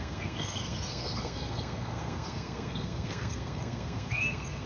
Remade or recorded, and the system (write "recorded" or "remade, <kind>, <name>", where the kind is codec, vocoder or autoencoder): remade, codec, SNAC